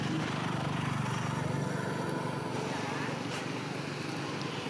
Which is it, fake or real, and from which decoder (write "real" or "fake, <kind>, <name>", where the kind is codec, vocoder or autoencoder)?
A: real